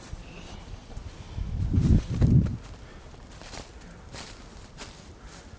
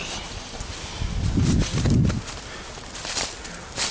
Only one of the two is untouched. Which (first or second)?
second